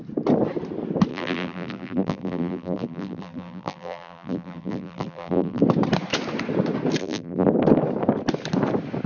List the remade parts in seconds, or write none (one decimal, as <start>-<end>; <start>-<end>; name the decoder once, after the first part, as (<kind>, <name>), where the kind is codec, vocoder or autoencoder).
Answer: 1.1-5.6 (vocoder, BigVGAN v2); 7.0-7.5